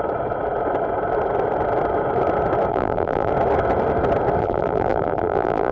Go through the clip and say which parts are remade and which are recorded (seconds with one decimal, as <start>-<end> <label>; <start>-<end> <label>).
0.0-2.7 recorded; 2.7-3.3 remade; 3.3-4.4 recorded; 4.4-5.7 remade